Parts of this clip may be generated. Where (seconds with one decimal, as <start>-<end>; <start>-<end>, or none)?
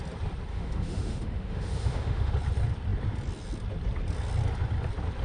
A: 0.5-2.3